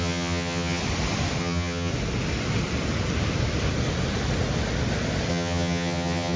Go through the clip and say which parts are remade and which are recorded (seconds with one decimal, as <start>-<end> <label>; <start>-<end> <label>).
0.0-0.8 remade; 0.8-1.4 recorded; 1.4-1.9 remade; 1.9-5.3 recorded; 5.3-6.4 remade